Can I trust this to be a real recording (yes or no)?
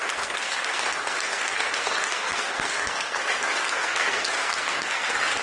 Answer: no